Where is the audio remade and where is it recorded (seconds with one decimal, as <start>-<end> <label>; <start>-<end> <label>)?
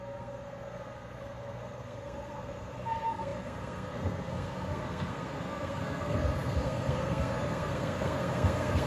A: 0.0-8.9 remade